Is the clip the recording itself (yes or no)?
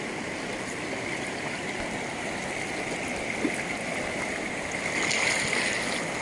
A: yes